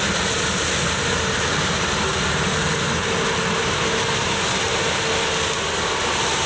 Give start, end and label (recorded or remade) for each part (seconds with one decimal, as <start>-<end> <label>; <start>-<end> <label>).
0.0-6.5 recorded